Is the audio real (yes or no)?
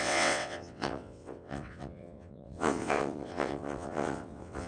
no